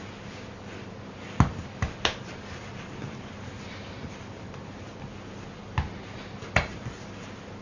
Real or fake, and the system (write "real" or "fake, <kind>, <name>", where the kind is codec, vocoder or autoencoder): real